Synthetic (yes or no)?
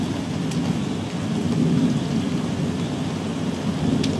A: no